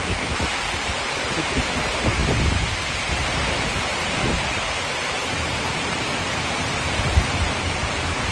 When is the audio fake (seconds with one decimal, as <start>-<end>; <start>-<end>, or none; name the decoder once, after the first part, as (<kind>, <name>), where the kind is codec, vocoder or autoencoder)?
3.3-8.3 (vocoder, BigVGAN v2)